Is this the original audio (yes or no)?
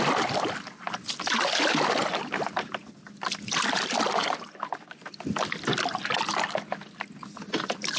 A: yes